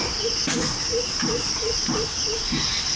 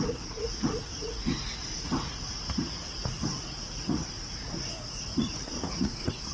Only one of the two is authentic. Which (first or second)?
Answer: first